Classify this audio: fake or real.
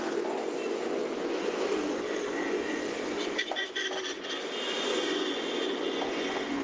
fake